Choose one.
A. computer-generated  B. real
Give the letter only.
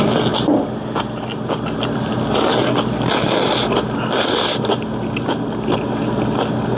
B